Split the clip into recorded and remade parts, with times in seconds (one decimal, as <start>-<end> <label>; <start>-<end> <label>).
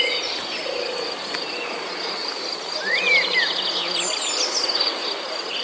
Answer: 0.0-2.2 recorded; 2.2-3.5 remade; 3.5-5.6 recorded